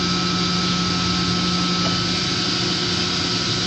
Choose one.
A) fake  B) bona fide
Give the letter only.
B